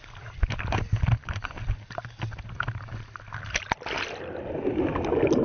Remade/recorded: recorded